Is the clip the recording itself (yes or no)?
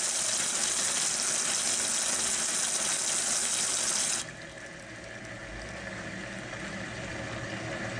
yes